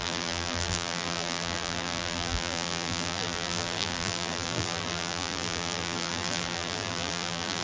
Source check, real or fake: fake